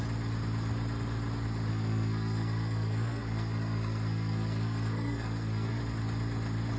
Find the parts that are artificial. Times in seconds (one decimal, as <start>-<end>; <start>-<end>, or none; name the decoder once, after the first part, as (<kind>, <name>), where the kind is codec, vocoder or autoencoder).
1.7-5.8 (codec, SNAC)